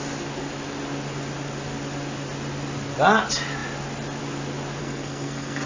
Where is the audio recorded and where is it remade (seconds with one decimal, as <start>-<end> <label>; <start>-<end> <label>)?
0.0-4.8 recorded; 4.8-5.7 remade